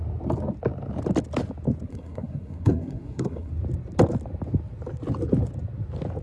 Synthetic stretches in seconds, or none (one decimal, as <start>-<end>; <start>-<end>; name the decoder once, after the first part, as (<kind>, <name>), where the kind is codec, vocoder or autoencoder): 1.9-3.5 (codec, SNAC)